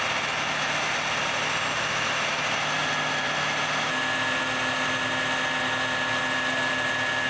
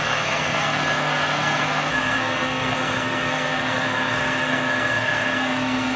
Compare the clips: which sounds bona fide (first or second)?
first